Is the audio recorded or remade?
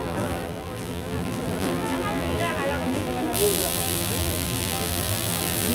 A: remade